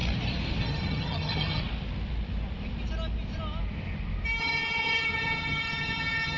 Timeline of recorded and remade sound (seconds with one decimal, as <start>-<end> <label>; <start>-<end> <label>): 0.0-0.6 recorded; 0.6-1.6 remade; 1.6-4.4 recorded; 4.4-6.4 remade